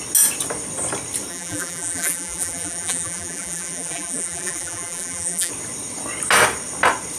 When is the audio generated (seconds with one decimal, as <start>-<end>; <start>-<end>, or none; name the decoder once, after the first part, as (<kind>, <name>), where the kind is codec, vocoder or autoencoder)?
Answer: 1.3-5.5 (vocoder, BigVGAN v2)